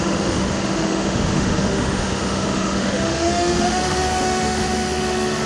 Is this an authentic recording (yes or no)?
no